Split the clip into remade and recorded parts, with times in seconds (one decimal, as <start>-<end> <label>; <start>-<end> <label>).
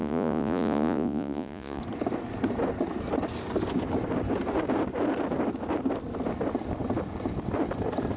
0.0-1.8 remade; 1.8-8.2 recorded